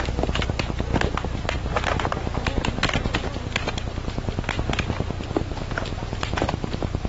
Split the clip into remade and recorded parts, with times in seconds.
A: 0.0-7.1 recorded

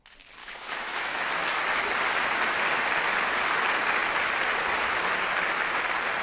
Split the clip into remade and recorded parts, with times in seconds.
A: 0.0-0.4 recorded; 0.4-1.1 remade; 1.1-6.2 recorded

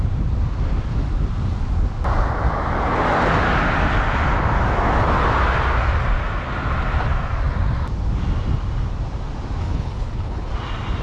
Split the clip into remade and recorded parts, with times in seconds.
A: 0.0-9.6 recorded; 9.6-10.5 remade; 10.5-11.0 recorded

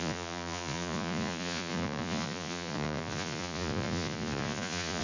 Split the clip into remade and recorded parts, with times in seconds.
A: 0.0-5.0 remade

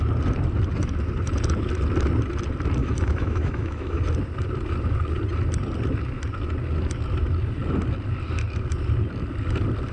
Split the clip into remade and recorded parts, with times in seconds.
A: 0.0-2.8 recorded; 2.8-4.0 remade; 4.0-9.9 recorded